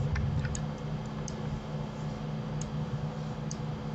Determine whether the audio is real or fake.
real